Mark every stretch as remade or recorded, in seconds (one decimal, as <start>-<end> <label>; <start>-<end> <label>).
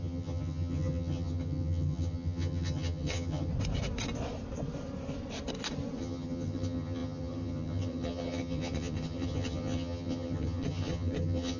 0.0-3.5 remade; 3.5-6.0 recorded; 6.0-11.6 remade